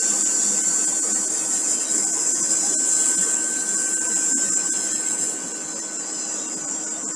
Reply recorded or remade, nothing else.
recorded